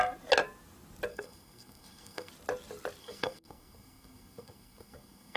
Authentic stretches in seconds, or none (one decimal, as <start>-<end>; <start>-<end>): 0.0-1.1; 2.3-3.0

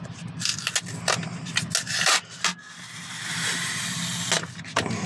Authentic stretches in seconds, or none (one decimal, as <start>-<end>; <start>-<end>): 0.0-5.1